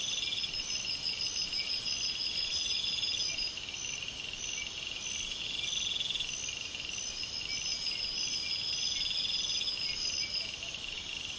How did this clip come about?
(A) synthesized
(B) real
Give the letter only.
B